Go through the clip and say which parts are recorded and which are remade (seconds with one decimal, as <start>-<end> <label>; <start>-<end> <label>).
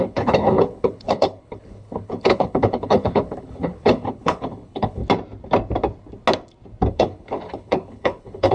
0.0-5.0 remade; 5.0-6.9 recorded; 6.9-8.5 remade